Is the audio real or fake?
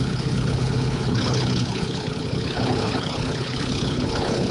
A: fake